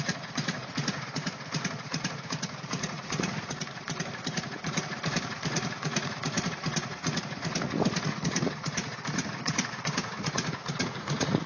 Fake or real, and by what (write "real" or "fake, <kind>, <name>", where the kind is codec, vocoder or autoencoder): fake, vocoder, Vocos